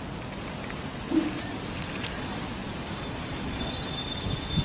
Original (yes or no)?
yes